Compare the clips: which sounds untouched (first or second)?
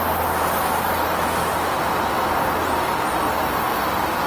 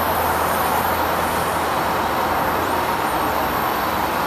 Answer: first